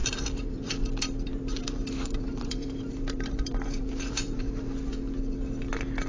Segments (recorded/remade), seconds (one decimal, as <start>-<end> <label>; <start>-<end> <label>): 0.0-0.7 remade; 0.7-1.3 recorded; 1.3-4.5 remade; 4.5-6.1 recorded